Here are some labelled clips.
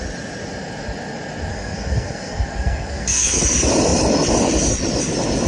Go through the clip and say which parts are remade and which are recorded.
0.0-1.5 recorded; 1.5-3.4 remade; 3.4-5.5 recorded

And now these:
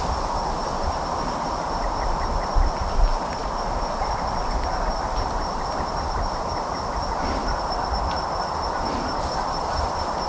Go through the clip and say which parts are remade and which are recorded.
0.0-10.3 recorded

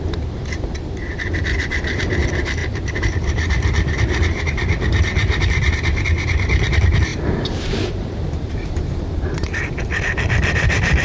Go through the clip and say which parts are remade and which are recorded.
0.0-2.6 recorded; 2.6-5.7 remade; 5.7-7.1 recorded; 7.1-8.5 remade; 8.5-11.0 recorded

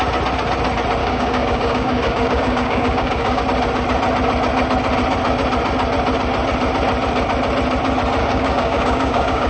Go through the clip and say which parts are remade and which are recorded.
0.0-1.0 recorded; 1.0-3.4 remade; 3.4-8.2 recorded; 8.2-9.5 remade

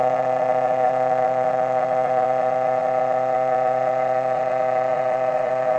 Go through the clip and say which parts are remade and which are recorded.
0.0-5.8 remade

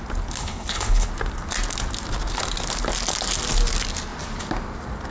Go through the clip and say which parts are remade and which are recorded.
0.0-0.4 recorded; 0.4-1.1 remade; 1.1-5.1 recorded

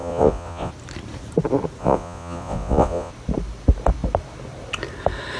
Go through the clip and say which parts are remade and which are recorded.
0.0-0.7 remade; 0.7-1.8 recorded; 1.8-3.1 remade; 3.1-5.4 recorded